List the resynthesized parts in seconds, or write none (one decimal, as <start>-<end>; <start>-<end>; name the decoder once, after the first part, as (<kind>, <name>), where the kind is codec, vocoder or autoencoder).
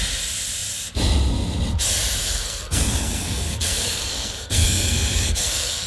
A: 2.2-5.9 (codec, SNAC)